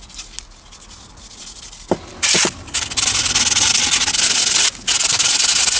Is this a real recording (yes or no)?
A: yes